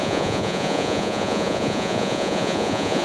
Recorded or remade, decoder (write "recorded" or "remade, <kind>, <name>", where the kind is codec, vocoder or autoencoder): remade, vocoder, Vocos